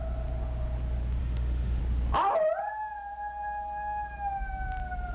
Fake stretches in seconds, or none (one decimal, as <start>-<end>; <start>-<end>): 1.2-1.8